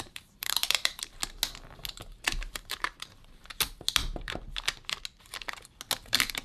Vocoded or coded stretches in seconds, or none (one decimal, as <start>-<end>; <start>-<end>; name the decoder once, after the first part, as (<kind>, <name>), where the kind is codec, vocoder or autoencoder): 0.0-1.2 (vocoder, BigVGAN v2); 2.5-3.5; 6.0-6.4